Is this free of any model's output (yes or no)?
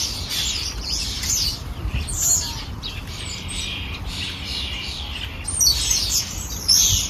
no